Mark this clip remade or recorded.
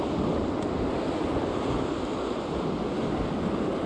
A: recorded